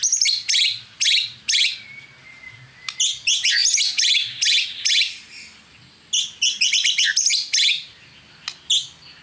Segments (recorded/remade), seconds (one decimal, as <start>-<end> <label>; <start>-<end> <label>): 0.0-9.2 recorded